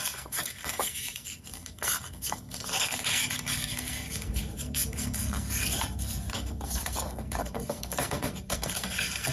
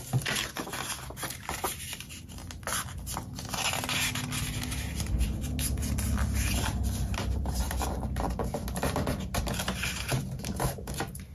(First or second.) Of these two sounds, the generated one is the first